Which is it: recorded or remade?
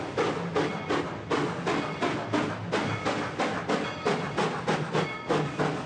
recorded